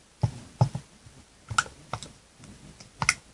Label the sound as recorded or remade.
recorded